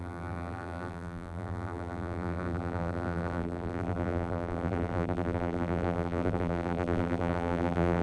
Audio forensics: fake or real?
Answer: fake